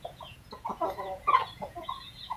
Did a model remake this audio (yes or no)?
yes